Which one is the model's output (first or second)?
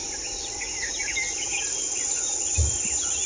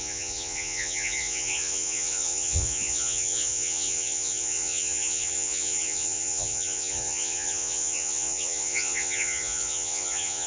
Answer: second